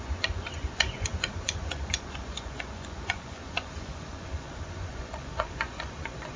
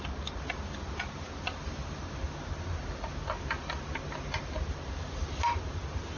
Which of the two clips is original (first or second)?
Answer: second